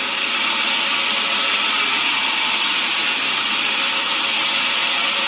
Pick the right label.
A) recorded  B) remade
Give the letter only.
A